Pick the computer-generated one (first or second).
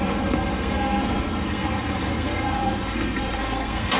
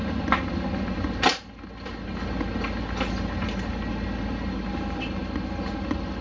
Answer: first